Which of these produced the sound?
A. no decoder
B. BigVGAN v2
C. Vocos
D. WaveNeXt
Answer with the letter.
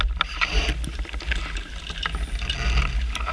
A